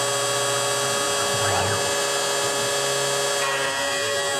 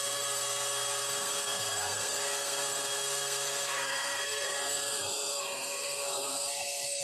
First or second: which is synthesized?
second